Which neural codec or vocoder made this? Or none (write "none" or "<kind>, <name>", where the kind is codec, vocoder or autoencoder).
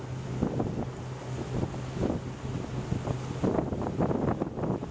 none